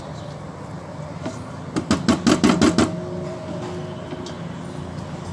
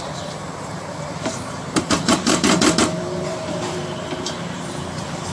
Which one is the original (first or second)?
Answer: first